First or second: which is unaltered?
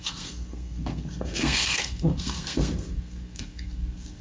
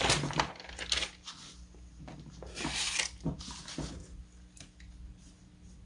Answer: second